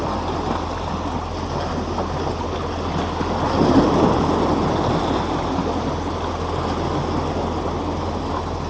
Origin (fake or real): real